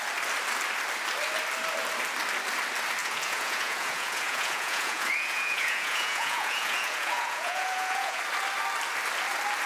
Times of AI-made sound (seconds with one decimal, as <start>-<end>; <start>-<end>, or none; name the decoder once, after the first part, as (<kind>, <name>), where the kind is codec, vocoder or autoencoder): 3.0-8.2 (vocoder, Vocos)

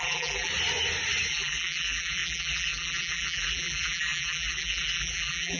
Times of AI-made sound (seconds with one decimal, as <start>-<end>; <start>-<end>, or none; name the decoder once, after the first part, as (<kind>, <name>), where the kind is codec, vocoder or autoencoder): 0.0-0.5 (vocoder, BigVGAN v2); 1.3-5.6

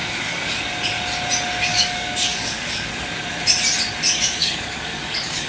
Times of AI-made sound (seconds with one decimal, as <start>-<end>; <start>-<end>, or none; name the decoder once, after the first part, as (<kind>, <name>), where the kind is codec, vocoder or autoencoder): 0.0-0.6 (codec, DAC); 1.7-2.9; 4.4-5.5